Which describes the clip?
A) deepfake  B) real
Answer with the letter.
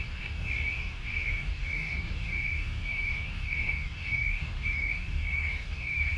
A